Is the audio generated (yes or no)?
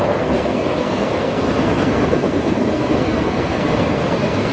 yes